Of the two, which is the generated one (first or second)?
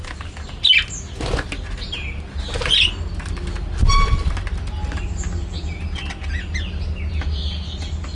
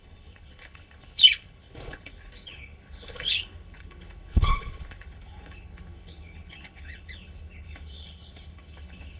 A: second